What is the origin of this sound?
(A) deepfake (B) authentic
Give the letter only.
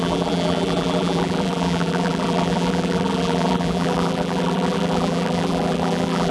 A